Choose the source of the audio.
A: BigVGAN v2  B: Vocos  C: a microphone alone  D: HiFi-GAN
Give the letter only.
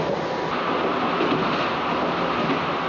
C